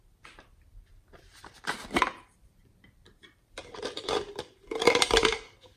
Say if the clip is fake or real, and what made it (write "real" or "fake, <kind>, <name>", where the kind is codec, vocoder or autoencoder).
fake, vocoder, BigVGAN v2